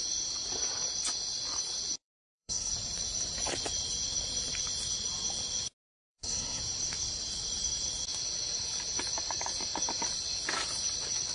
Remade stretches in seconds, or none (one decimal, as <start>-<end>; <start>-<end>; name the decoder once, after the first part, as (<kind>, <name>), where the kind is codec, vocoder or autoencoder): 2.0-2.7 (codec, SNAC); 6.1-6.6